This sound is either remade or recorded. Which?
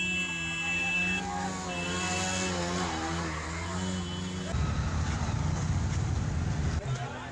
recorded